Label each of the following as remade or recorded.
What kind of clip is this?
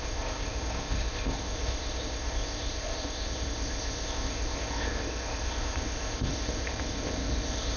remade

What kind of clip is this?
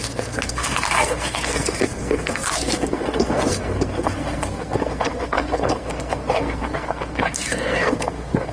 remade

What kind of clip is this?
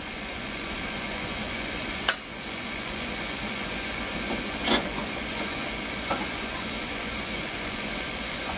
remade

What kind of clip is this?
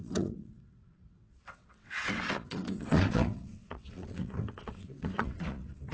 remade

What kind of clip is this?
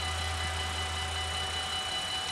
recorded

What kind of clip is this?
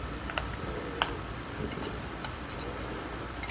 recorded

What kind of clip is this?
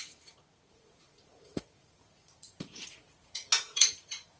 remade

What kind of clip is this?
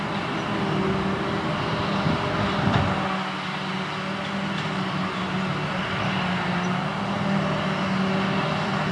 recorded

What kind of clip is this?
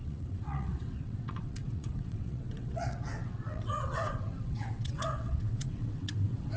remade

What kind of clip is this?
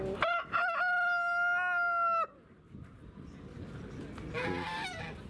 recorded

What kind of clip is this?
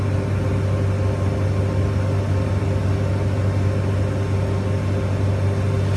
recorded